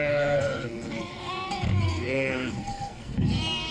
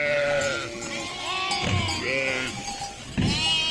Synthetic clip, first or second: first